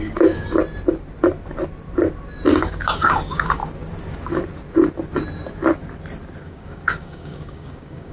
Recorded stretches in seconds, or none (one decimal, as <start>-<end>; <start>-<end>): 0.6-2.5; 3.6-6.4